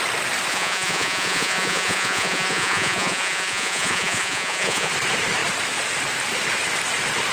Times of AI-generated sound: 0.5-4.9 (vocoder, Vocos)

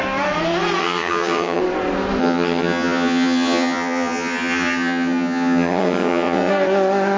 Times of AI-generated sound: 0.8-1.6 (vocoder, HiFi-GAN); 2.2-6.5